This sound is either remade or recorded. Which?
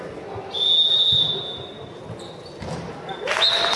recorded